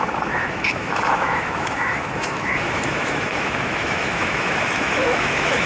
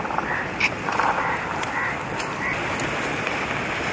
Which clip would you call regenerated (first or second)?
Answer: first